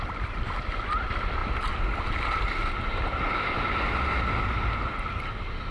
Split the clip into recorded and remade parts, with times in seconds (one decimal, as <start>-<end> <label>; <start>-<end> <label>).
0.0-5.7 recorded